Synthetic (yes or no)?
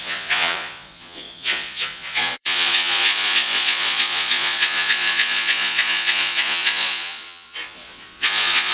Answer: yes